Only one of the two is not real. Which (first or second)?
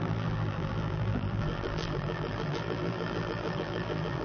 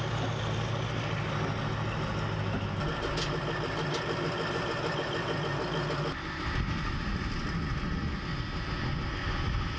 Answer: first